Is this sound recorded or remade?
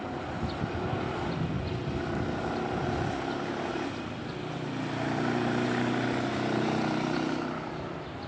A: recorded